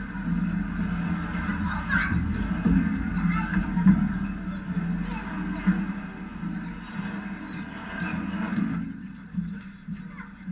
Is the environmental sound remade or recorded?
recorded